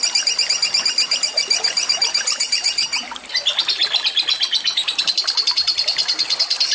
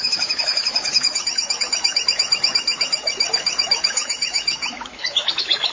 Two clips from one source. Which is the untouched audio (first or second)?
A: first